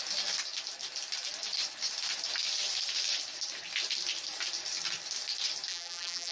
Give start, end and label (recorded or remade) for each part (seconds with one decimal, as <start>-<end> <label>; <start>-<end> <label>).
0.0-5.7 recorded; 5.7-6.3 remade

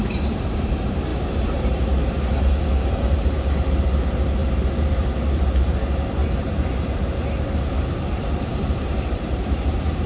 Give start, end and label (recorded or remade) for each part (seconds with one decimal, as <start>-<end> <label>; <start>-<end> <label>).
0.0-10.1 remade

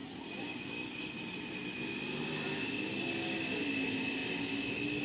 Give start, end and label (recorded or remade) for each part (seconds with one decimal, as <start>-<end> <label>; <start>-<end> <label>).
0.0-5.0 recorded

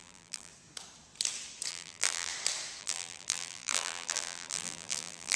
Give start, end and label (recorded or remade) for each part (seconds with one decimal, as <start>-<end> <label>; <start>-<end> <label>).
0.0-0.5 remade; 0.5-1.7 recorded; 1.7-2.3 remade; 2.3-2.8 recorded; 2.8-5.4 remade

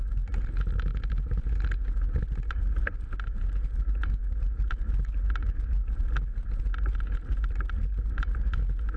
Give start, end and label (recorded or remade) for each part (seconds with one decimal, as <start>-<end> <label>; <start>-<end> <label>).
0.0-9.0 recorded

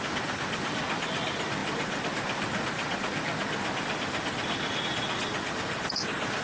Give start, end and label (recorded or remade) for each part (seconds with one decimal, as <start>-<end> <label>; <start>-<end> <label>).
0.0-6.4 recorded

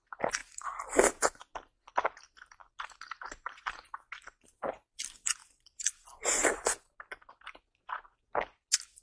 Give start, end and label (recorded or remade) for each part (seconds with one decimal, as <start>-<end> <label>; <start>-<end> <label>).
0.0-5.4 recorded; 5.4-7.3 remade; 7.3-9.0 recorded